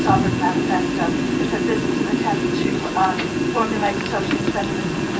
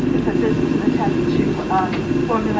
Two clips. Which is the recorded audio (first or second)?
second